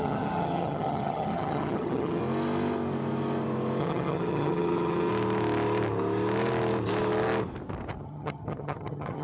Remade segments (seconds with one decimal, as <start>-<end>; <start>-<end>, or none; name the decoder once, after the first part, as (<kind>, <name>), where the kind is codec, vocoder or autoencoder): 0.0-2.2 (vocoder, HiFi-GAN); 3.8-5.1; 8.0-9.2

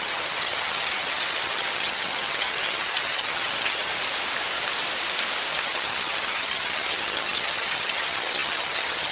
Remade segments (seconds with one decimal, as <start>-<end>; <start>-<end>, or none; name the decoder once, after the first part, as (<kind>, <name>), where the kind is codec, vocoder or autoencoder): 0.0-3.9 (vocoder, HiFi-GAN); 5.5-9.1

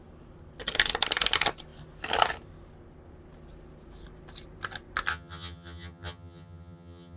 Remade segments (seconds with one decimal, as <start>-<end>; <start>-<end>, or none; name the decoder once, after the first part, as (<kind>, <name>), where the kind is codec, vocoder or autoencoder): 5.1-7.2 (vocoder, HiFi-GAN)

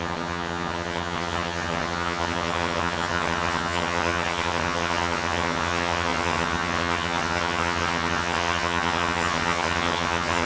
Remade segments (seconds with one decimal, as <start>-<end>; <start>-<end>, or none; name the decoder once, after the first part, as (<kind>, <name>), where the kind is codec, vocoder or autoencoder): 0.0-10.5 (vocoder, HiFi-GAN)

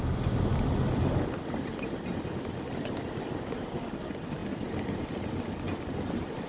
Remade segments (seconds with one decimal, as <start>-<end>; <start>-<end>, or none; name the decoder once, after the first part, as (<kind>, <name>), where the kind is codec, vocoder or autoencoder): none

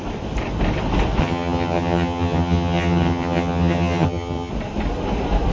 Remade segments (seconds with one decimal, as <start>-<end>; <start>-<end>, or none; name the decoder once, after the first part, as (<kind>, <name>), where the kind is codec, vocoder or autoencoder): 1.2-4.5 (vocoder, HiFi-GAN)